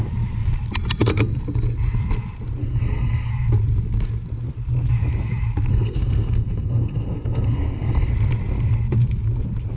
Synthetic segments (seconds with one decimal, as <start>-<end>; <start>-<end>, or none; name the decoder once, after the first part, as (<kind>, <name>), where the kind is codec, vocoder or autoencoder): 2.6-3.3 (codec, SNAC); 5.7-8.1